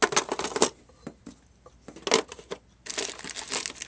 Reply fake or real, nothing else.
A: real